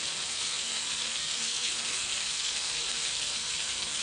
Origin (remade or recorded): remade